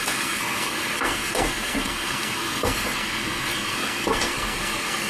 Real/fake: fake